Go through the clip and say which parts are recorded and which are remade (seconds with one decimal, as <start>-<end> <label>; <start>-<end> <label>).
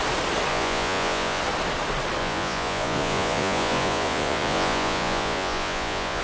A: 0.0-0.5 recorded; 0.5-1.4 remade; 1.4-2.2 recorded; 2.2-6.2 remade